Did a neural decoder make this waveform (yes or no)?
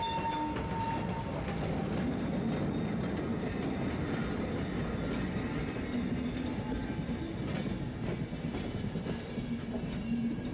no